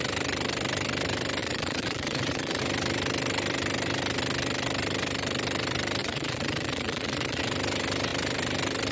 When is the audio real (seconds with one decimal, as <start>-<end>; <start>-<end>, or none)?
0.0-1.4; 2.6-6.0; 7.4-8.9